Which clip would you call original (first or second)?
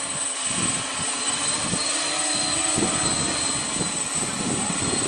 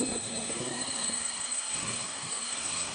first